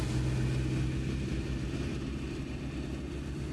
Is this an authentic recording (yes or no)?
yes